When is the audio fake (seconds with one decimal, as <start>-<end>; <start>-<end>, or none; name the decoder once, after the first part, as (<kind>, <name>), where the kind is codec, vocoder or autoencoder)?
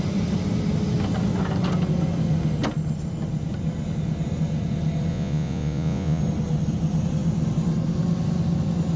5.1-6.2 (vocoder, Vocos)